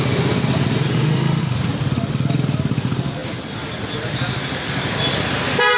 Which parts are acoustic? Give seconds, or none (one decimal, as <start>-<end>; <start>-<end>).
0.0-0.9; 1.4-5.8